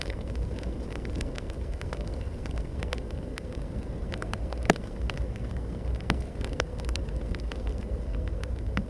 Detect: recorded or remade remade